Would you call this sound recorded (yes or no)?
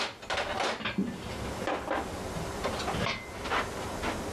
yes